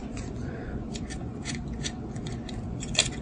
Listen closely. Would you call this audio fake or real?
fake